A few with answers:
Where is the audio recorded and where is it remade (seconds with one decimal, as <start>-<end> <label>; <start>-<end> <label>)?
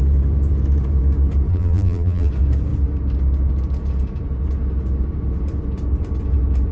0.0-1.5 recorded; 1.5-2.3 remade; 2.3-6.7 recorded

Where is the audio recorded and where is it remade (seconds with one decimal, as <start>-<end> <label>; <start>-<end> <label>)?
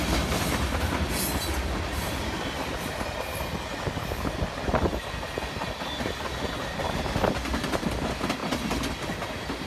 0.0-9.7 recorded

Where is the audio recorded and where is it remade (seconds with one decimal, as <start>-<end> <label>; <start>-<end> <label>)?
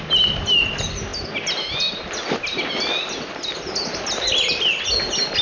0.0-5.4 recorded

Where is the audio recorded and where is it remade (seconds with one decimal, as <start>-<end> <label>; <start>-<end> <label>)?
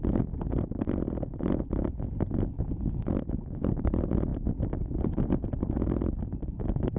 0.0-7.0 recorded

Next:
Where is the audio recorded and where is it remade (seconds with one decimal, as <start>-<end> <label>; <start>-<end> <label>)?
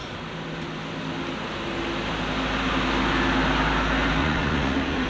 0.0-4.2 recorded; 4.2-5.1 remade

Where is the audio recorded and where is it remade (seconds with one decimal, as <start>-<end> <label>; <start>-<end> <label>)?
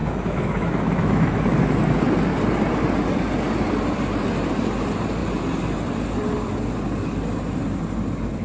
0.0-1.8 remade; 1.8-8.4 recorded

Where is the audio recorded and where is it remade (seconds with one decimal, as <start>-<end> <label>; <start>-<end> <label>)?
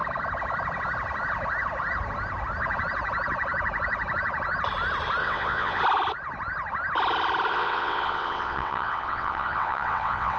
0.0-5.2 recorded; 5.2-5.8 remade; 5.8-7.5 recorded; 7.5-10.4 remade